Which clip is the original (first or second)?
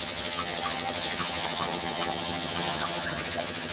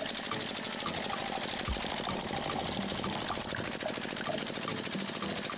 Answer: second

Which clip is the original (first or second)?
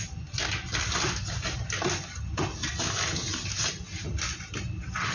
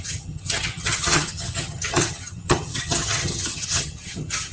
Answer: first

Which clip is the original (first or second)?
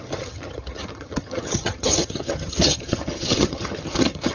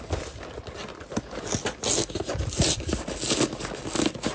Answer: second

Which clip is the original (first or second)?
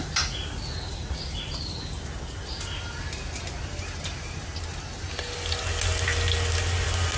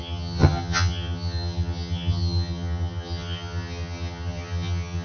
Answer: first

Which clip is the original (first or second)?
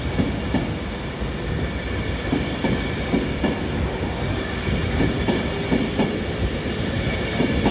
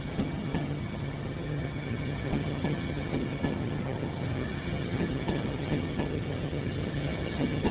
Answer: first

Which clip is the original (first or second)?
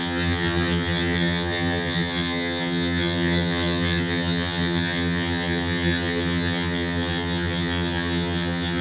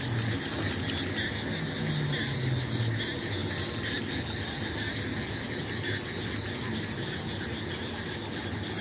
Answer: second